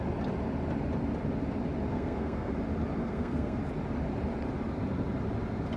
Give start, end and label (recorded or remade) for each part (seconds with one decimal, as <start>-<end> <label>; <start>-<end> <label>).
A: 0.0-1.9 recorded; 1.9-2.5 remade; 2.5-3.0 recorded; 3.0-3.6 remade; 3.6-5.8 recorded